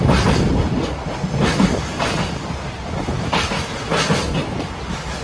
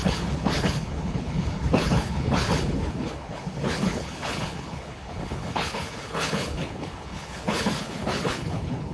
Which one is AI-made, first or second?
second